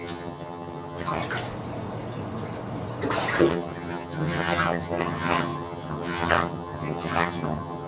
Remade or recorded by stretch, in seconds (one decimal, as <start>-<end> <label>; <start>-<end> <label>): 0.0-1.2 remade; 1.2-3.4 recorded; 3.4-7.9 remade